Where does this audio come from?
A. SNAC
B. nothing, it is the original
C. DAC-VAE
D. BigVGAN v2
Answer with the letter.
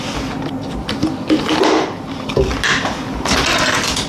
B